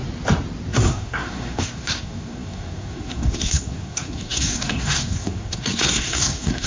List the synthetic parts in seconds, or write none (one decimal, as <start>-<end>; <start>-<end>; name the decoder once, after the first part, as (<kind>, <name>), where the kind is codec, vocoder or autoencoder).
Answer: 0.7-6.7 (codec, SNAC)